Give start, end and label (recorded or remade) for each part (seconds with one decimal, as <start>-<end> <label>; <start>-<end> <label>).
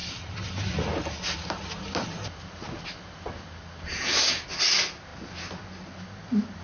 0.0-6.6 recorded